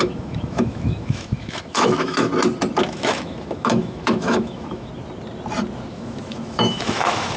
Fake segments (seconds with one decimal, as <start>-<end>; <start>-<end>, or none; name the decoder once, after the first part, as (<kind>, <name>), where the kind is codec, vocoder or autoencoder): 0.0-2.3 (autoencoder, DAC-VAE); 2.9-4.9; 5.9-7.4